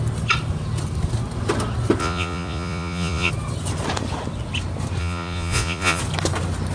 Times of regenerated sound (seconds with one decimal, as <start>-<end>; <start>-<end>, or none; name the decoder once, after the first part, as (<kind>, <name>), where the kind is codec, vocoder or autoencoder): 2.0-3.3 (vocoder, Vocos); 5.0-6.0